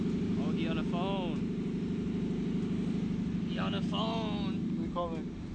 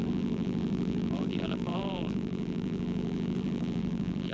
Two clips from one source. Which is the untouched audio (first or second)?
first